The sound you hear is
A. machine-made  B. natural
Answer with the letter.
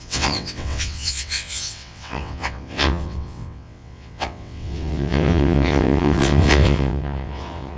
A